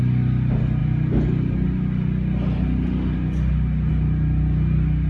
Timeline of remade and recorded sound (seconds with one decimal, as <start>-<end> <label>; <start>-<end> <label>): 0.0-5.1 recorded